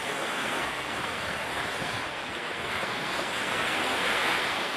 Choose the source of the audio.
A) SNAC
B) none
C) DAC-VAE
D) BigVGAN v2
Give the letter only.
A